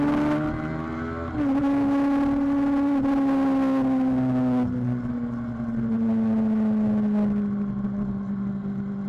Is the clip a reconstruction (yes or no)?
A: no